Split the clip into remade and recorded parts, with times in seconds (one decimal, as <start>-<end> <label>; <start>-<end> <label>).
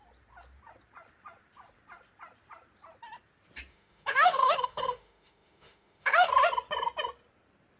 0.0-3.7 recorded; 3.7-6.3 remade; 6.3-7.8 recorded